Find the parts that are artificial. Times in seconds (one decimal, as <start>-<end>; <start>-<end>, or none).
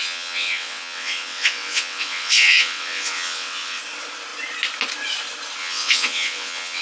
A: 0.0-3.8; 5.6-6.8